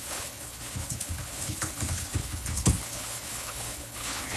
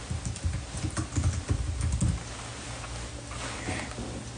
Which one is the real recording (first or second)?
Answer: second